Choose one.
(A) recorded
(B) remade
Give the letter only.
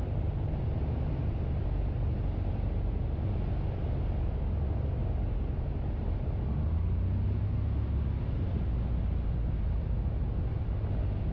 A